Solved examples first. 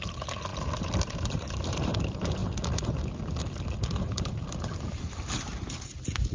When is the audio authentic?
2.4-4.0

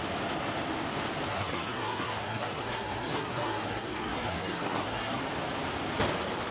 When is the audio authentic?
0.0-1.3; 5.2-6.5

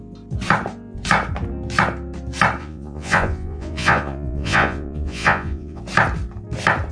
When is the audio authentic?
0.0-2.6; 5.8-6.9

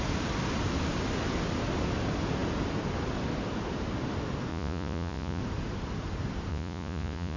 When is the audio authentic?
0.0-4.5; 5.4-6.5